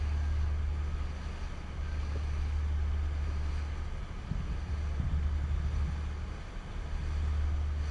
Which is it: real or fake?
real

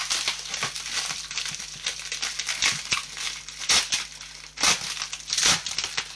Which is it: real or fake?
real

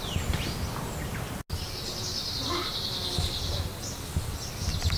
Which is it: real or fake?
real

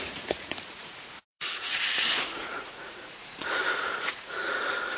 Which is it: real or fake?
fake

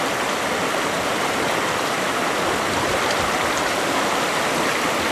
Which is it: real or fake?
real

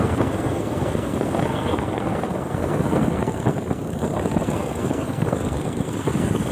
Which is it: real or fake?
fake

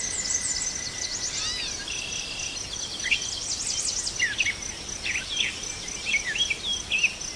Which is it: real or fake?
real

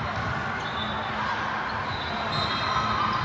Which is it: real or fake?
real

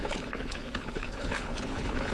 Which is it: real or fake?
fake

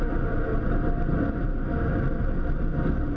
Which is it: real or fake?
real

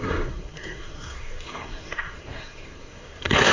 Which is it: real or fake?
fake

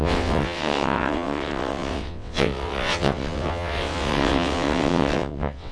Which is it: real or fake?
fake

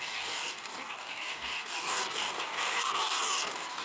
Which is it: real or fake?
fake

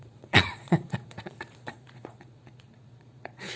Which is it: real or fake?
fake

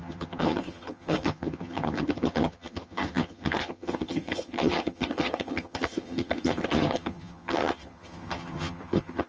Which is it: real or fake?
fake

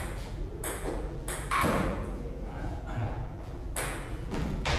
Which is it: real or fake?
fake